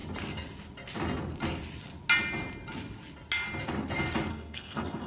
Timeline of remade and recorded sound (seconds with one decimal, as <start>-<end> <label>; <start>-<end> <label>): 0.0-4.3 recorded; 4.3-5.1 remade